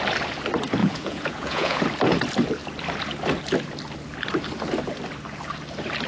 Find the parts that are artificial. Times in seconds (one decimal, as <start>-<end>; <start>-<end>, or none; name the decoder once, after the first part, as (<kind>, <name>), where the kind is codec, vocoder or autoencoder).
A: 0.8-1.8 (vocoder, Vocos)